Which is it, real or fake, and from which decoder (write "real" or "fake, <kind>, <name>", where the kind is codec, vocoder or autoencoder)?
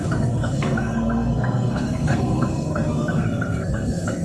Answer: fake, codec, SNAC